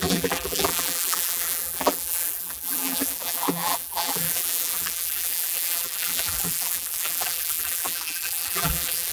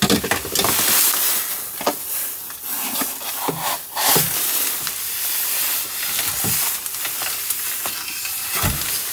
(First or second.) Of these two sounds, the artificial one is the first